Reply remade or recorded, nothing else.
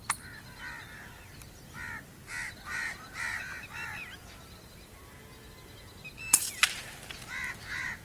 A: recorded